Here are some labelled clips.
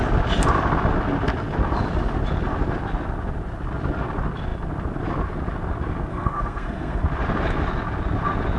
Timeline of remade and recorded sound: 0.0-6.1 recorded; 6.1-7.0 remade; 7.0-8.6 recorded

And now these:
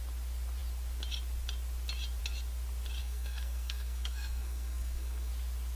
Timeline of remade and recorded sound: 0.0-3.0 recorded; 3.0-5.3 remade; 5.3-5.8 recorded

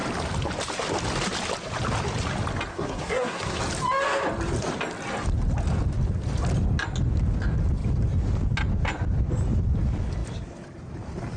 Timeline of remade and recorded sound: 0.0-2.7 recorded; 2.7-3.6 remade; 3.6-11.4 recorded

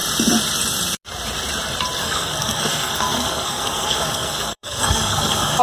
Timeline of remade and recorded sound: 0.0-2.0 recorded; 2.0-5.6 remade

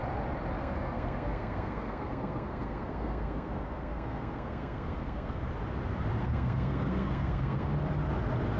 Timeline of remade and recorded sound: 0.0-0.6 recorded; 0.6-5.4 remade; 5.4-6.2 recorded; 6.2-7.7 remade; 7.7-8.6 recorded

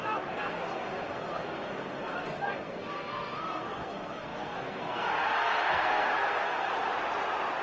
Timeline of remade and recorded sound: 0.0-6.7 remade; 6.7-7.6 recorded

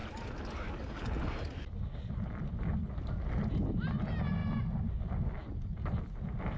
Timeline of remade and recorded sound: 0.0-6.6 recorded

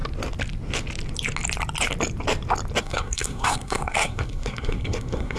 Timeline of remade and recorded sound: 0.0-2.8 recorded; 2.8-5.4 remade